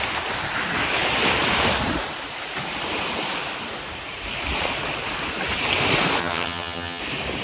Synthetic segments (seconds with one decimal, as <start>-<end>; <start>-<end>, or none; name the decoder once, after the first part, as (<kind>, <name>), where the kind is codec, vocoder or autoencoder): 6.2-7.0 (vocoder, HiFi-GAN)